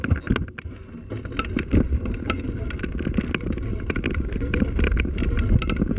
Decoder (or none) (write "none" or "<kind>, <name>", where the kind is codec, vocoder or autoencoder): none